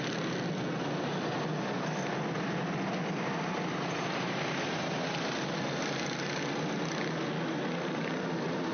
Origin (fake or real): real